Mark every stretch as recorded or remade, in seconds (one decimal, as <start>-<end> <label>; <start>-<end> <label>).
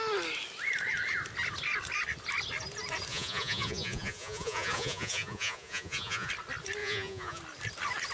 0.0-3.1 recorded; 3.1-6.3 remade; 6.3-6.8 recorded; 6.8-7.4 remade; 7.4-8.1 recorded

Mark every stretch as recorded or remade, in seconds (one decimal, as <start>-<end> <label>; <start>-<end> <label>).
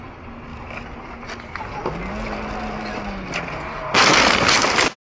0.0-5.0 recorded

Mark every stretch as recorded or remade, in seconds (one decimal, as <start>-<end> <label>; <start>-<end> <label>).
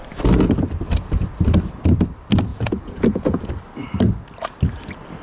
0.0-2.5 recorded; 2.5-3.5 remade; 3.5-5.2 recorded